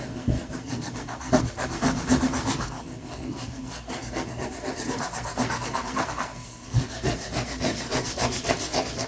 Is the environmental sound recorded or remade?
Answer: remade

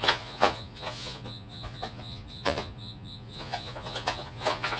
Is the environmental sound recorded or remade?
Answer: remade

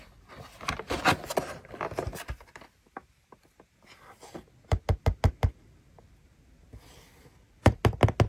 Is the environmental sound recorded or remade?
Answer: recorded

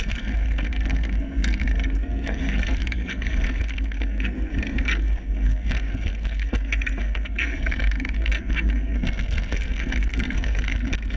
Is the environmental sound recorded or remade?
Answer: remade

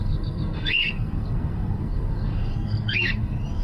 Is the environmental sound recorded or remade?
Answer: remade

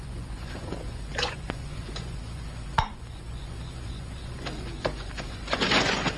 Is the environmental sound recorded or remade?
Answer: remade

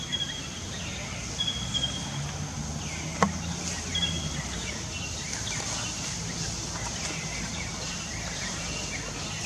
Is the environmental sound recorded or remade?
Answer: remade